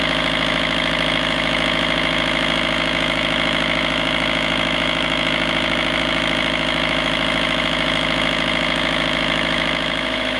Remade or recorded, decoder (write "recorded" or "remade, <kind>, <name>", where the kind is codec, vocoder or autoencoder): remade, autoencoder, DAC-VAE